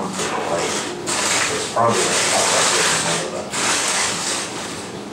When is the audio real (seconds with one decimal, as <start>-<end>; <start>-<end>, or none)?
0.0-1.0; 1.5-2.9